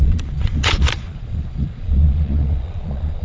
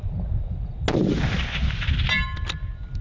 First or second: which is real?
second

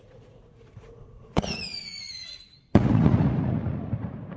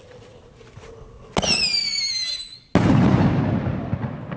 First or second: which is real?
second